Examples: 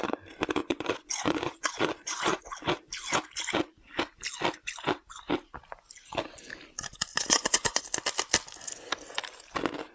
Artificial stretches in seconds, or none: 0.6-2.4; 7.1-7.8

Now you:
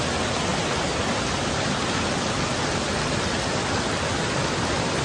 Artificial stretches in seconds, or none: none

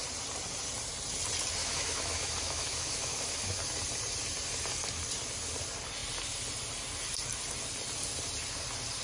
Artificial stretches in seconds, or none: 1.6-3.6

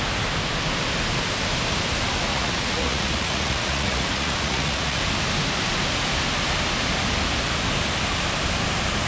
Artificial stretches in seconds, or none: 2.3-5.0

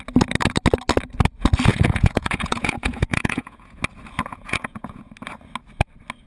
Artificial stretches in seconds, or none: 1.7-3.8; 4.3-5.1

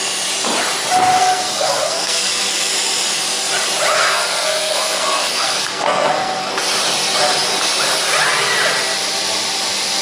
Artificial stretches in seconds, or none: 1.2-2.7; 3.9-6.5

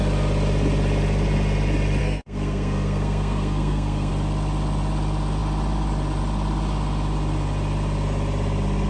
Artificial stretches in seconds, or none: 2.0-4.1